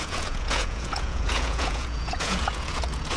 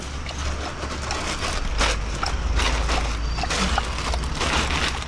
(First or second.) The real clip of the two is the second